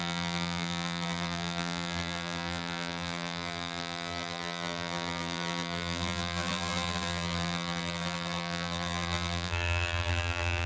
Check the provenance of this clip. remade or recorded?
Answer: remade